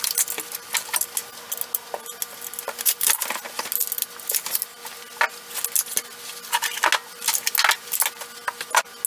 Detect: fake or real real